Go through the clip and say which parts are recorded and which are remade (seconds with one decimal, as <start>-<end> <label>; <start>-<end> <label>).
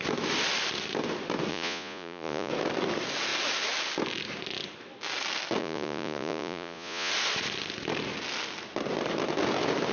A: 0.0-1.5 recorded; 1.5-2.5 remade; 2.5-5.6 recorded; 5.6-7.1 remade; 7.1-9.9 recorded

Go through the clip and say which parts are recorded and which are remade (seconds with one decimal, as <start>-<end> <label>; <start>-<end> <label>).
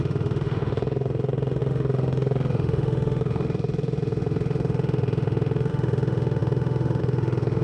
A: 0.0-7.6 remade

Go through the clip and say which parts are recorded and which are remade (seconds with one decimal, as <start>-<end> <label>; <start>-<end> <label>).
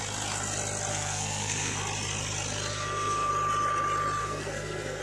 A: 0.0-0.9 recorded; 0.9-1.8 remade; 1.8-2.7 recorded; 2.7-3.3 remade; 3.3-4.2 recorded; 4.2-5.0 remade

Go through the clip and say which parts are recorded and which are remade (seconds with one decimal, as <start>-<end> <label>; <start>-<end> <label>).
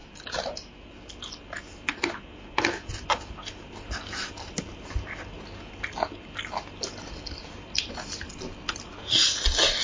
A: 0.0-9.8 recorded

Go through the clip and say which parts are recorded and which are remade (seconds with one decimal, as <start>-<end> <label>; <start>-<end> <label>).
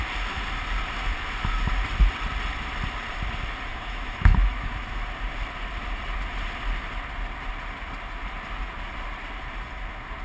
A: 0.0-3.7 recorded; 3.7-4.7 remade; 4.7-10.2 recorded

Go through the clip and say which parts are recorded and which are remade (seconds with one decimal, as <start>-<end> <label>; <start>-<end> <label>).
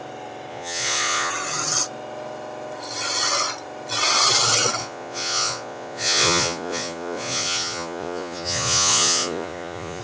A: 0.0-0.5 recorded; 0.5-1.3 remade; 1.3-4.8 recorded; 4.8-10.0 remade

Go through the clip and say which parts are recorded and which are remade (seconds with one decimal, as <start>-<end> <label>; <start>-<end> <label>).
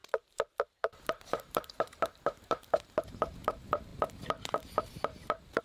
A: 0.0-5.6 remade